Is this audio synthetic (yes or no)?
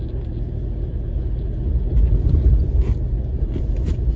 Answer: no